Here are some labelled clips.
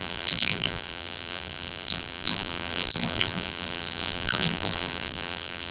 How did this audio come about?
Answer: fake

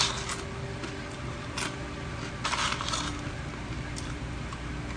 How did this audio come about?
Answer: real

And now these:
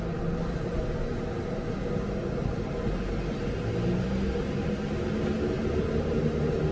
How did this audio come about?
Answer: real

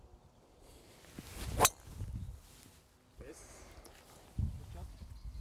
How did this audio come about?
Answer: real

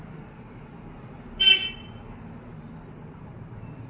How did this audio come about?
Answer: real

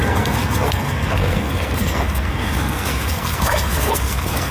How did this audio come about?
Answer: fake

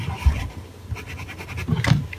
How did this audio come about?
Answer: real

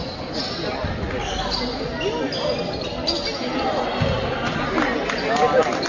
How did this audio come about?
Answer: real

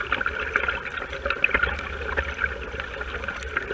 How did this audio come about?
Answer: real